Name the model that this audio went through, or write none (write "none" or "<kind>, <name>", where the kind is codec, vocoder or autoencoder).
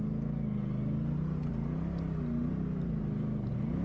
none